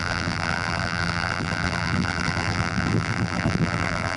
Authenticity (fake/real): fake